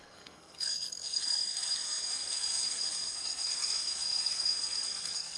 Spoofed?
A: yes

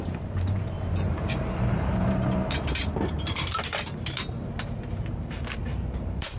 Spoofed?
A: yes